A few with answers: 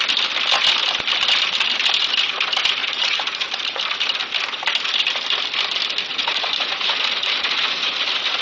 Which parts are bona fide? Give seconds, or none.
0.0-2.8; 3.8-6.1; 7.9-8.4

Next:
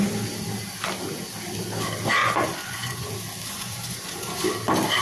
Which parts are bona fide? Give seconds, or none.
0.0-2.2; 3.1-3.5; 4.4-5.0

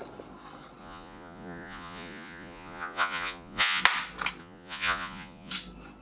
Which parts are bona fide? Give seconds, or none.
0.0-0.8; 3.8-4.4; 5.5-6.0

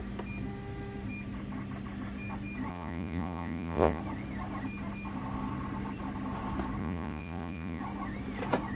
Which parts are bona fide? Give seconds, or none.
0.0-2.7; 4.0-6.8; 7.8-8.8

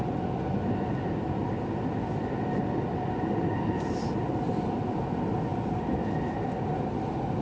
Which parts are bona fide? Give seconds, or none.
0.0-7.4

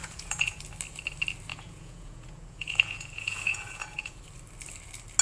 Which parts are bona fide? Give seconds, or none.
0.6-1.5; 4.2-5.2

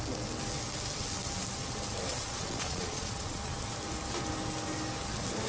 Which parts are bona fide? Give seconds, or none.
0.0-2.1; 3.6-5.5